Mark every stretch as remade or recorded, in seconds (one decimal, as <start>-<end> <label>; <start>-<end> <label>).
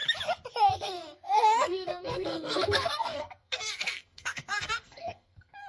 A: 0.0-0.7 recorded; 0.7-5.7 remade